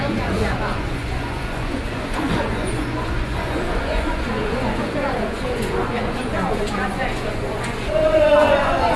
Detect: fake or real fake